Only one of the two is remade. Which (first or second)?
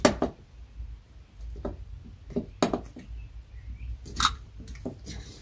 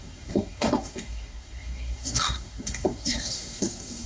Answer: second